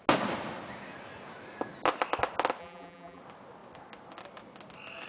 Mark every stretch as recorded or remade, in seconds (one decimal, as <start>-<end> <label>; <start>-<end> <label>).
0.0-2.6 recorded; 2.6-3.2 remade; 3.2-5.1 recorded